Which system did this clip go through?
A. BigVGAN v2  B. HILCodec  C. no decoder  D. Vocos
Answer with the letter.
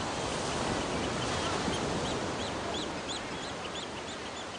C